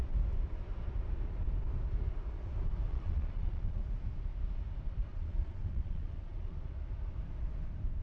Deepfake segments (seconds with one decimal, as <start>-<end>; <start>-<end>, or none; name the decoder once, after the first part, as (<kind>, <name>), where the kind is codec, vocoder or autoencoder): 2.9-3.8 (vocoder, Vocos); 5.1-6.7